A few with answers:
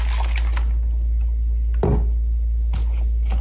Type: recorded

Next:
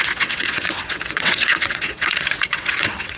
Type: remade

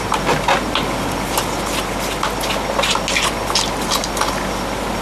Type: recorded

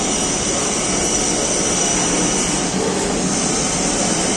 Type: recorded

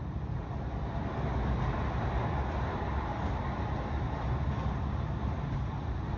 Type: recorded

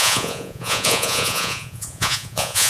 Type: remade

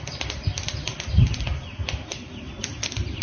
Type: recorded